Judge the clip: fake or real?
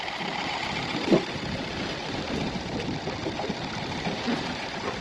fake